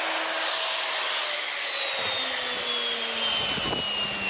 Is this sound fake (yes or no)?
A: no